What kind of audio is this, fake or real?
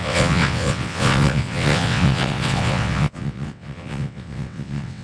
fake